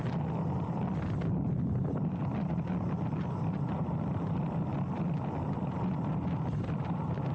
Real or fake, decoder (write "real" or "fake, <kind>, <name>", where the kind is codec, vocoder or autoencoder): real